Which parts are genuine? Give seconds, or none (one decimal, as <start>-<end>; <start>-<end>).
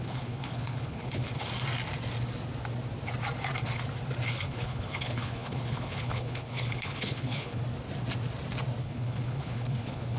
1.3-4.3; 7.6-8.8